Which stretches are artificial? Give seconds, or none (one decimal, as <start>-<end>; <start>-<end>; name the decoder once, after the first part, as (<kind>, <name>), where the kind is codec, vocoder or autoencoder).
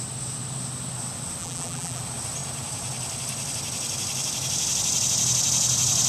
1.4-2.0 (vocoder, BigVGAN v2)